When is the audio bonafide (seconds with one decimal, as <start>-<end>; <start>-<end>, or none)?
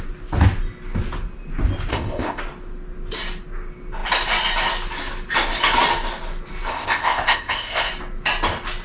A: 0.0-1.9; 2.4-6.7; 7.9-8.8